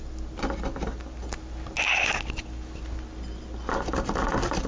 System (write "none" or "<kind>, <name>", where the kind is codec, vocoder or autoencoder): none